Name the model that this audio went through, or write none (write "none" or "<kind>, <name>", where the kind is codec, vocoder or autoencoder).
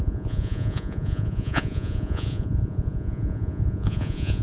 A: vocoder, Vocos